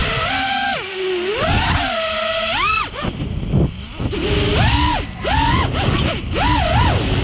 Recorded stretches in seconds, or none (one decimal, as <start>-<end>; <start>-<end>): 0.0-7.2